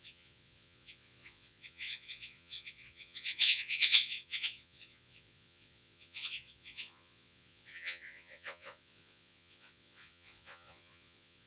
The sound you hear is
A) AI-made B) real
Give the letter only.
A